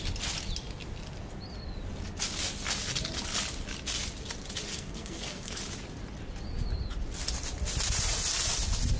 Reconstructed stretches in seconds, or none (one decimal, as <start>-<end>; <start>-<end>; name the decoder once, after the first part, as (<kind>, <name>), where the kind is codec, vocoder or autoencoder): 4.7-5.6 (codec, SNAC)

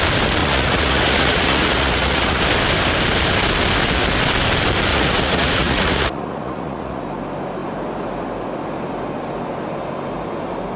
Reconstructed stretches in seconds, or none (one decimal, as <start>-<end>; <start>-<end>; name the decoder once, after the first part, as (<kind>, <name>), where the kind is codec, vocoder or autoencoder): 0.4-2.4 (vocoder, Vocos); 4.9-7.0

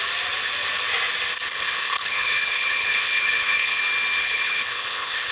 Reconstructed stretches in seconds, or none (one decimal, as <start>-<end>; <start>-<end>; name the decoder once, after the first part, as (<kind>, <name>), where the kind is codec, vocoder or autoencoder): 1.5-3.8 (codec, HILCodec); 4.2-5.3

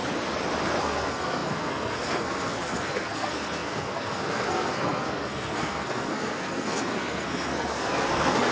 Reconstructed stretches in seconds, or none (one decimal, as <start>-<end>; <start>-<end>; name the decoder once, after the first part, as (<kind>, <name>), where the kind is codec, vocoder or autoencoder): 0.8-8.5 (codec, SNAC)